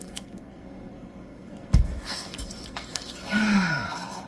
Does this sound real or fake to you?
fake